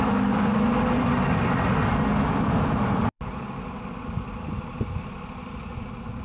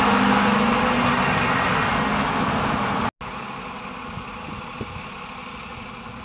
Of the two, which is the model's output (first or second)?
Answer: first